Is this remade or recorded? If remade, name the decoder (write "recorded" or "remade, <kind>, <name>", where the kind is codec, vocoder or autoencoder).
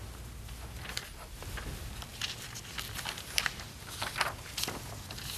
recorded